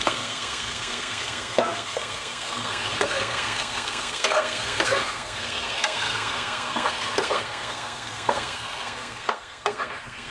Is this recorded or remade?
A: remade